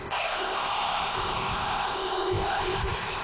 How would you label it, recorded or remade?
remade